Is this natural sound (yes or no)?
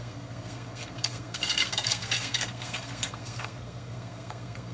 no